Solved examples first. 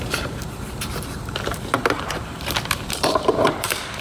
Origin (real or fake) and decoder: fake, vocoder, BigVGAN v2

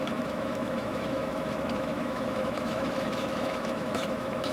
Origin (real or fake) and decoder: fake, autoencoder, DAC-VAE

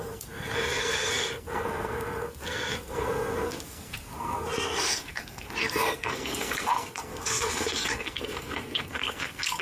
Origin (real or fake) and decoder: fake, codec, SNAC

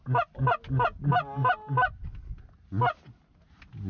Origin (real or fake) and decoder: real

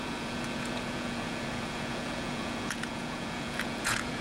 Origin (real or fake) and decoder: fake, vocoder, Vocos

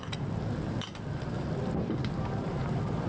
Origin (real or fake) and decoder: real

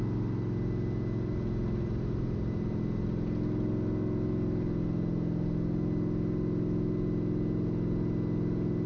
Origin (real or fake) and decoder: real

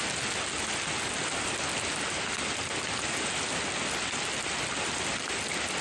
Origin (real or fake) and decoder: real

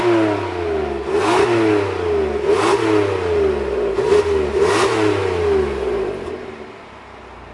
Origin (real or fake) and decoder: real